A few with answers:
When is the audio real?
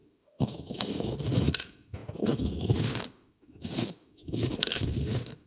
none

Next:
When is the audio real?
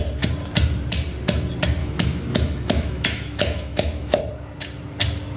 0.0-1.8; 4.2-5.4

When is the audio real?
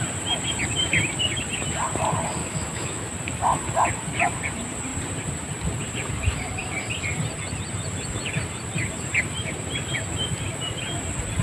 0.0-2.4; 3.1-11.4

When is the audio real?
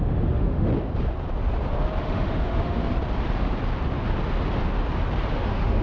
0.7-2.0; 2.8-5.3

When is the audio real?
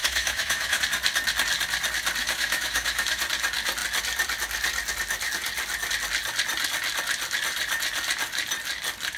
0.8-2.2; 3.2-9.2